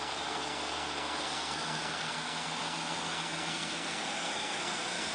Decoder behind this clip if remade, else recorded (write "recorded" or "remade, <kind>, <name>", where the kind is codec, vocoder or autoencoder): remade, codec, SNAC